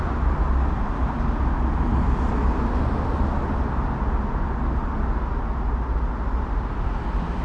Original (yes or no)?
yes